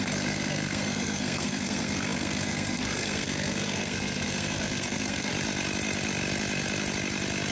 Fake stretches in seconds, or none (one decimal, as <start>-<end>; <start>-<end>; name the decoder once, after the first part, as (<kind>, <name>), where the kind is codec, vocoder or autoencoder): 0.0-5.3 (codec, SNAC)